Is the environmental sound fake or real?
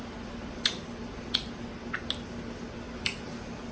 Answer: real